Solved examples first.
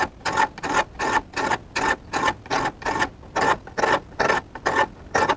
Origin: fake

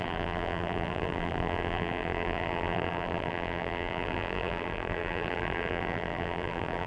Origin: fake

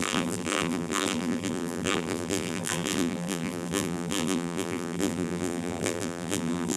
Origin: fake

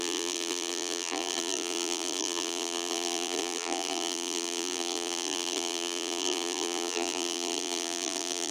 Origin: fake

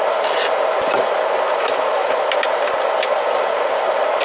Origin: real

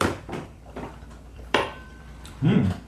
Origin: fake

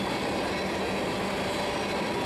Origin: real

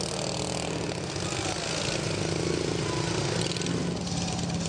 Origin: real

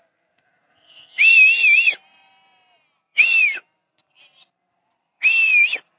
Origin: fake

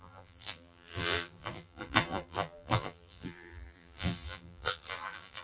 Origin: fake